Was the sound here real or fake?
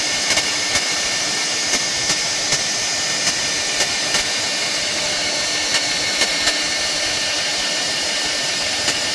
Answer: real